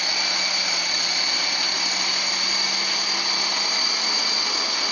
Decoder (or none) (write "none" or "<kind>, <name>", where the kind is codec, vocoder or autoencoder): none